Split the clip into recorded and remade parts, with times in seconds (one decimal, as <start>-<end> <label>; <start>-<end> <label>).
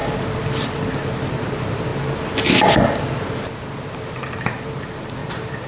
0.0-5.2 remade; 5.2-5.7 recorded